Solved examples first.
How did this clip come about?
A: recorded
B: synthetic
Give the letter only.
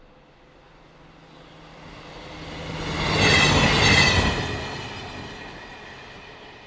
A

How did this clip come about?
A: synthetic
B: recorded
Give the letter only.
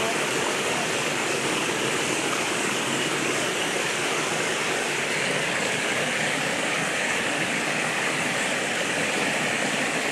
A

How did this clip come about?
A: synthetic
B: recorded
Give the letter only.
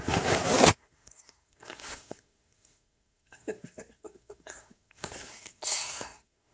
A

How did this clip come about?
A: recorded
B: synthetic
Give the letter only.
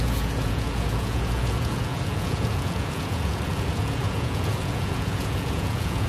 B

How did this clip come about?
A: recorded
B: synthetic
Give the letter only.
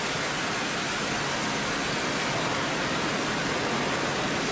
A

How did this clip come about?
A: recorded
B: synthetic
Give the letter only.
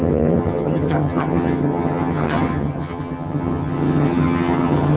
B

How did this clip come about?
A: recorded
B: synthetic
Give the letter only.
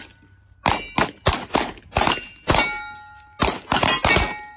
A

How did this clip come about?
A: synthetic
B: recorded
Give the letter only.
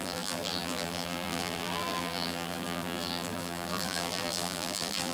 A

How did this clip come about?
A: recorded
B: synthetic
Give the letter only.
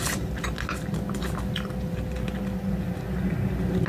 A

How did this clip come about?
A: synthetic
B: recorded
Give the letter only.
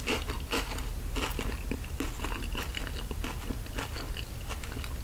B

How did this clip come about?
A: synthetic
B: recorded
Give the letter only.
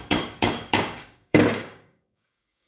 A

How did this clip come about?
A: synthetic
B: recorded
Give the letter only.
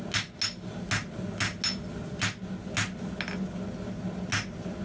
B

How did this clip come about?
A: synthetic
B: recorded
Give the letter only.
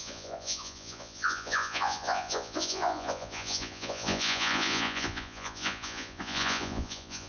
A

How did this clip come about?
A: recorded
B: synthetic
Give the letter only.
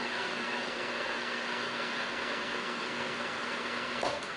B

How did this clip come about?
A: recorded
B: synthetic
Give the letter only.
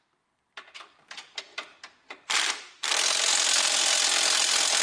B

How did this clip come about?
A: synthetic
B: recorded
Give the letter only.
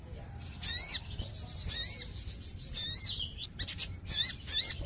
B